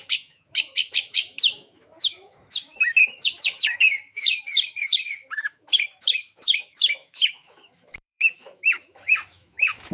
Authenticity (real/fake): fake